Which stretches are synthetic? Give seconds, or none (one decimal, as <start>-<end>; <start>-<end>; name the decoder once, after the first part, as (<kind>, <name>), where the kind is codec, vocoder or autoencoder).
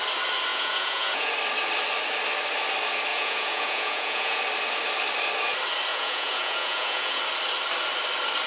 0.5-1.3 (vocoder, Vocos); 3.1-4.4; 5.9-7.2